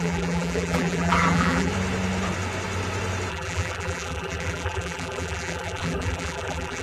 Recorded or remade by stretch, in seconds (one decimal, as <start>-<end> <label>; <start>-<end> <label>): 0.0-1.7 remade; 1.7-3.3 recorded; 3.3-6.8 remade